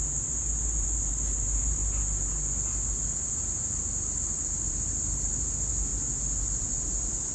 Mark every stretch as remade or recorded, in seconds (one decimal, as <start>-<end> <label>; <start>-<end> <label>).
0.0-1.8 remade; 1.8-3.4 recorded; 3.4-5.9 remade; 5.9-6.6 recorded; 6.6-7.3 remade